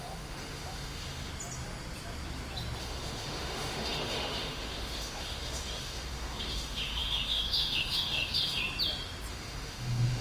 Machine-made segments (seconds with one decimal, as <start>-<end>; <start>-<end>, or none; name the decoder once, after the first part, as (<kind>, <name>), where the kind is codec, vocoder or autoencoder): 0.0-1.3 (autoencoder, DAC-VAE); 2.8-8.6; 9.3-10.2